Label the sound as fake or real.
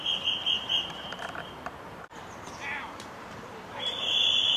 fake